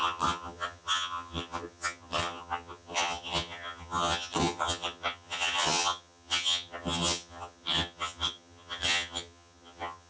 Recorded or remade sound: remade